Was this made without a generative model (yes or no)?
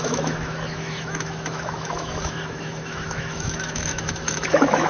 no